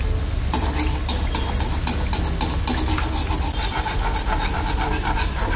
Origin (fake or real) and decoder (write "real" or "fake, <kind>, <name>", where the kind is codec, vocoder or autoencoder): real